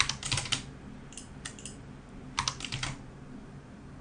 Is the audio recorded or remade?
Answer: recorded